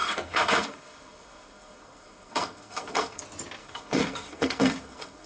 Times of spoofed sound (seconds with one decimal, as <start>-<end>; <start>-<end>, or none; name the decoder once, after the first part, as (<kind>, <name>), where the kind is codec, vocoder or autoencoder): 0.0-3.2 (codec, SNAC); 3.6-5.3